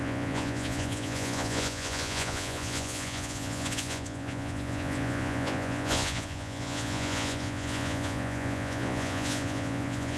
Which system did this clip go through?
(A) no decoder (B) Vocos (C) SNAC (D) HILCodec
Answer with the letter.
B